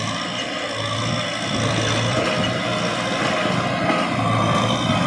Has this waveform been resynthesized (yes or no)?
no